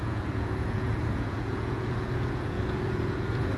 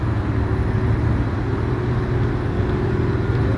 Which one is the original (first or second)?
second